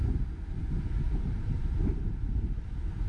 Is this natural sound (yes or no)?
yes